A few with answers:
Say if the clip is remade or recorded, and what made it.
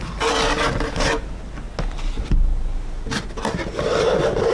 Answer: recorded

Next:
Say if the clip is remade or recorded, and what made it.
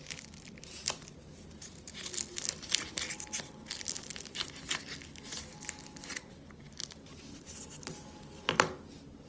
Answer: recorded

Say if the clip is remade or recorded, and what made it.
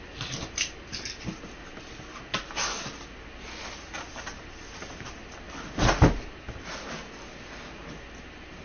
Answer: recorded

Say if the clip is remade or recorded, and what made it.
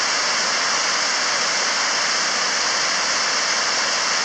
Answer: recorded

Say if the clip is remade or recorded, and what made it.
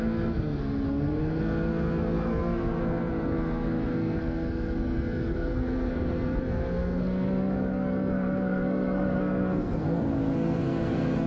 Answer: remade, codec, SNAC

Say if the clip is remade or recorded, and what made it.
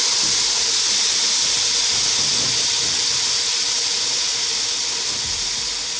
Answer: recorded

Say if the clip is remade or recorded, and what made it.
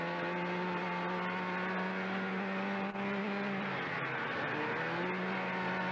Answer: recorded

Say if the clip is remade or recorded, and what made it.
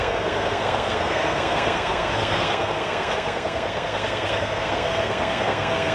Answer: remade, codec, SNAC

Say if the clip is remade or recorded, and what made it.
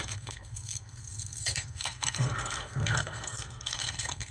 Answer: remade, codec, SNAC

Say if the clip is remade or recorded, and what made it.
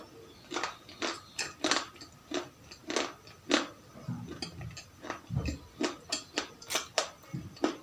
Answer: recorded